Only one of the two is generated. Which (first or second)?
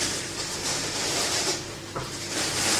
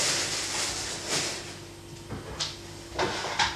first